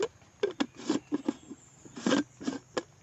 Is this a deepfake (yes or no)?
no